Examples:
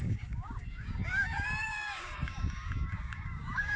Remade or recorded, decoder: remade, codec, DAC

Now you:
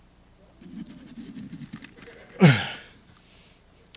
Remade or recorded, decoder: recorded